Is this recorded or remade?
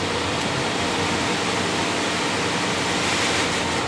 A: recorded